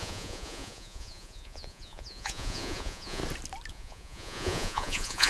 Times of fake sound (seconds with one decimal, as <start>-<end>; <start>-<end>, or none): 0.0-3.2; 3.7-5.3

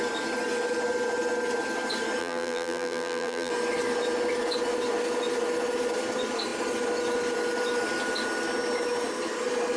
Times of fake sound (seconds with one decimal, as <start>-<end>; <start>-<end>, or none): 2.2-3.5

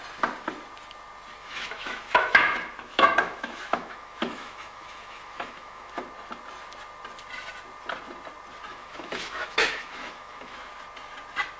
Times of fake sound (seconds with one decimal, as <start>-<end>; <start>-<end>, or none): 1.4-5.9; 8.7-10.7

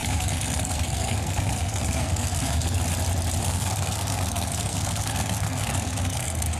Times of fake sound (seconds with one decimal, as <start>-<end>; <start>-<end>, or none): 0.0-2.8; 3.4-6.6

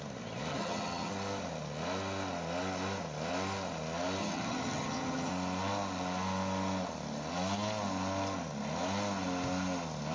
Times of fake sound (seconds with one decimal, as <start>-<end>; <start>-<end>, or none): 0.5-1.1; 4.2-5.3

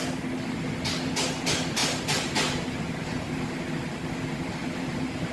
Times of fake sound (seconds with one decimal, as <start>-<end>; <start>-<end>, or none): 1.8-3.6; 4.6-5.3

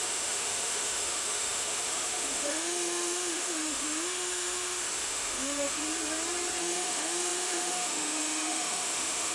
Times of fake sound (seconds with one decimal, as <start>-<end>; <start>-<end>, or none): 0.0-5.8; 6.6-9.3